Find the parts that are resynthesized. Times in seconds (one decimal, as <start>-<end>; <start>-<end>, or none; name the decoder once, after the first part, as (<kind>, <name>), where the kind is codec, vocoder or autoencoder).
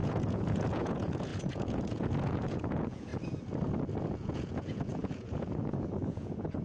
0.0-3.1 (vocoder, Vocos); 4.0-6.6